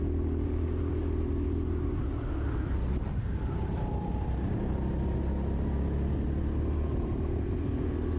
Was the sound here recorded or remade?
recorded